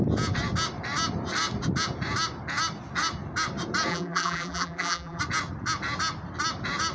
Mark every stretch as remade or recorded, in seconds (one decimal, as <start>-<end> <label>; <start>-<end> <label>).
0.0-3.9 recorded; 3.9-5.2 remade; 5.2-6.9 recorded